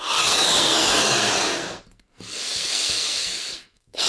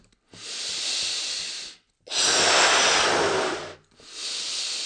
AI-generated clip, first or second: first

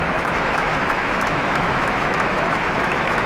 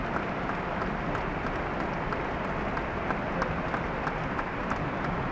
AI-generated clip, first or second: first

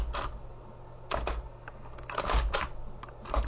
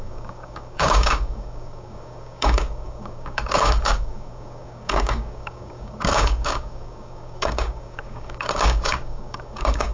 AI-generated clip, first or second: second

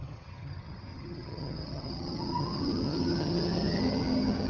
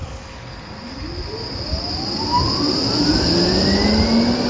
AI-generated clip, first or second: first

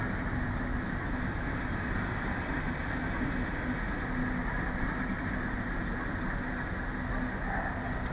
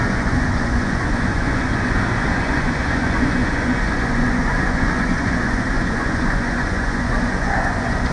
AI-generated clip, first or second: second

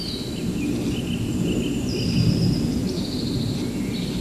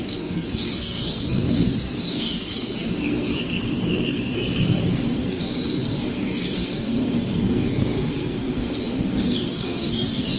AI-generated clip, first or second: second